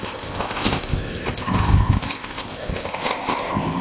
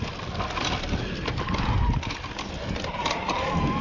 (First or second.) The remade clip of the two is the first